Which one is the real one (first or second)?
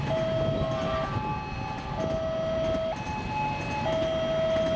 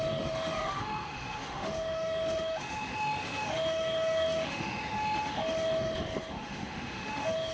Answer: first